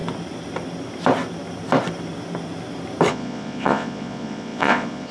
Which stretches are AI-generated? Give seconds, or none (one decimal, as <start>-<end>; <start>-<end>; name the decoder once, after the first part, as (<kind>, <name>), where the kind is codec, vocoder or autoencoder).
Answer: 3.1-5.1 (vocoder, Vocos)